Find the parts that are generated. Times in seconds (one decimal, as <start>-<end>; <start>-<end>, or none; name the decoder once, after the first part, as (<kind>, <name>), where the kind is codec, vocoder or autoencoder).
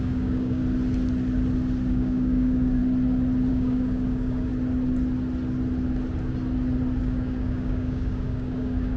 0.0-0.6 (codec, DAC); 1.9-2.8; 3.5-4.5; 7.0-9.0